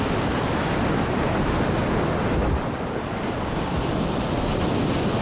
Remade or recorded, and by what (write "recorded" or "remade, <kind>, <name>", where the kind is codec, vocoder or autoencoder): recorded